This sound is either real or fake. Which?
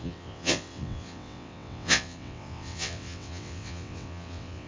fake